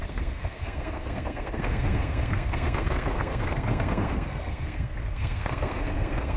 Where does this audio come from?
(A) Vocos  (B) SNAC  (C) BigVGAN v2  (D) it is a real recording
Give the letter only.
B